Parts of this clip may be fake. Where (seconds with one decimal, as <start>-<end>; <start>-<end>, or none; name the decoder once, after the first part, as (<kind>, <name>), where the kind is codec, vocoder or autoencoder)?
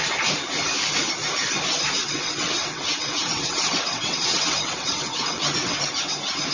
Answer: 2.0-5.9 (vocoder, WaveNeXt)